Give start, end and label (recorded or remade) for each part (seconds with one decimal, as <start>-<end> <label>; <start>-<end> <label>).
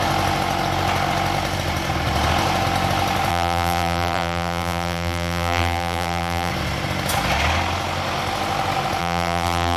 0.0-3.3 recorded; 3.3-6.5 remade; 6.5-9.0 recorded; 9.0-9.8 remade